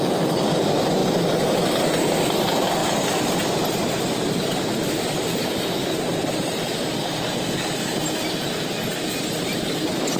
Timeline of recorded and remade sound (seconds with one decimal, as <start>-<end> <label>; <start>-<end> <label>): 0.0-10.2 recorded